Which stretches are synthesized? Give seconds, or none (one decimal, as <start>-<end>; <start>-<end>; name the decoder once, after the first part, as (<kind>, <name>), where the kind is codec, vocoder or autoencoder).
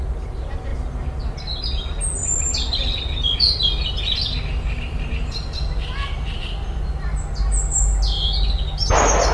2.2-6.4 (vocoder, BigVGAN v2)